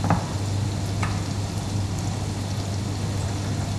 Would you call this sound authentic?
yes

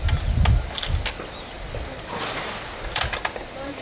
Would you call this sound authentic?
yes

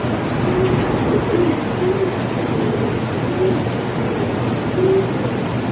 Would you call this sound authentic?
yes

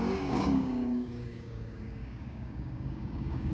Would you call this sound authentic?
no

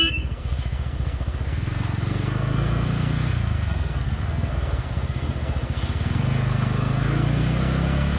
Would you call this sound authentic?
no